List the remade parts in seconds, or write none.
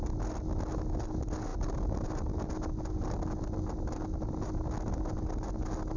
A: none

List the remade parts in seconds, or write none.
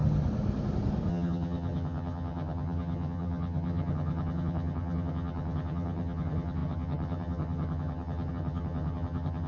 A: 1.1-9.5 (vocoder, HiFi-GAN)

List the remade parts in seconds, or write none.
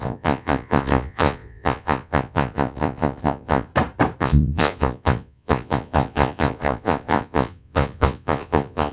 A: 0.0-3.7 (vocoder, Vocos); 4.2-8.9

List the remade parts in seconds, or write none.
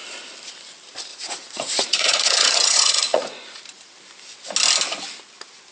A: 1.1-3.6 (vocoder, Vocos)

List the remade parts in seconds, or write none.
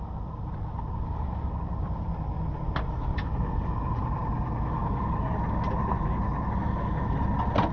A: none